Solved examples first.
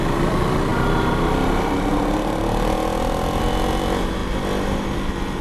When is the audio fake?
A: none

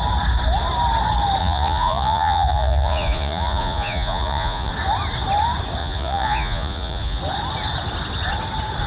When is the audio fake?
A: 1.4-4.7 (vocoder, Vocos); 5.8-7.2

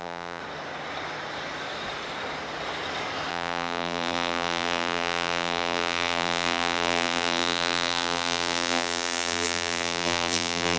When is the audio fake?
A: 0.0-0.4 (vocoder, BigVGAN v2); 3.3-10.8

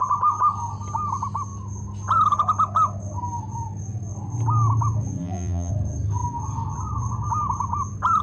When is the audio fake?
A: 5.2-5.7 (vocoder, BigVGAN v2)

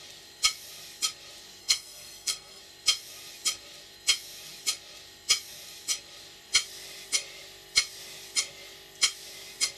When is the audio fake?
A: 1.6-2.6 (codec, SNAC)

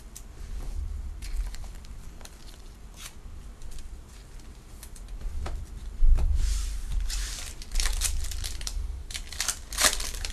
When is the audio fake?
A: 0.0-10.3 (vocoder, BigVGAN v2)

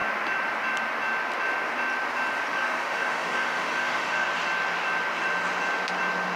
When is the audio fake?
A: 2.5-4.3 (autoencoder, DAC-VAE)

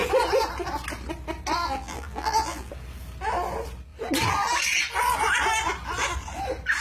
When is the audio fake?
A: 1.6-2.7 (vocoder, BigVGAN v2)